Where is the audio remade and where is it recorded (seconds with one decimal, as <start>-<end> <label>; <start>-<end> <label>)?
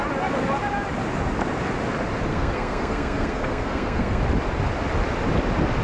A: 0.0-2.3 recorded; 2.3-4.2 remade; 4.2-5.8 recorded